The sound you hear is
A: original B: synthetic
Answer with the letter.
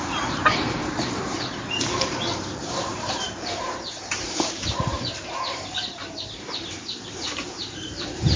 B